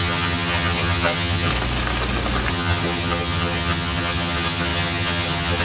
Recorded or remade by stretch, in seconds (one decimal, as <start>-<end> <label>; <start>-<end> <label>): 0.0-1.5 remade; 1.5-2.5 recorded; 2.5-5.6 remade